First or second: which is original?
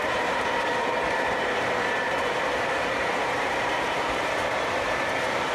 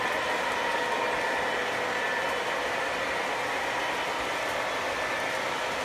second